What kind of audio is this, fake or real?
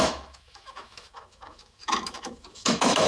fake